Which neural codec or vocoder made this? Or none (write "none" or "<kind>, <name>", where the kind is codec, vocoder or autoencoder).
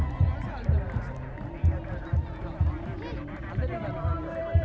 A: none